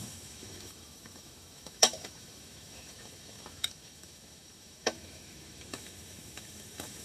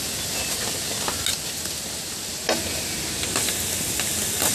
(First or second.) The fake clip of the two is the first